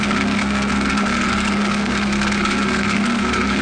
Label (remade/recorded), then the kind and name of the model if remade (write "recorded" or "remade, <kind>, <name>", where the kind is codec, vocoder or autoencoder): remade, codec, SNAC